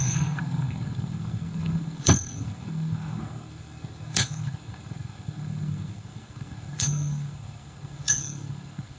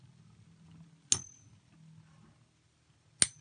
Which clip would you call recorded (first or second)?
second